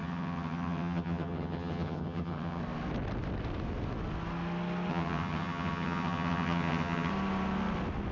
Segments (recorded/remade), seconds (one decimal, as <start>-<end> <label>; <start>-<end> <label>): 0.0-2.6 remade; 2.6-4.9 recorded; 4.9-7.1 remade; 7.1-8.1 recorded